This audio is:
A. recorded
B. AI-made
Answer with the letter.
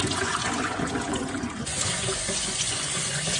B